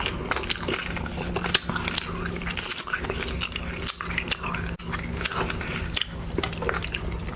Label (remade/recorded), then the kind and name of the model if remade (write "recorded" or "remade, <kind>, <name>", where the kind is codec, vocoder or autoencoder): recorded